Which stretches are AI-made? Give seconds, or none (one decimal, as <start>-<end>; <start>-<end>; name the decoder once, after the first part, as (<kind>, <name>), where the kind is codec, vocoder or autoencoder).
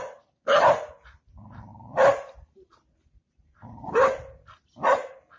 none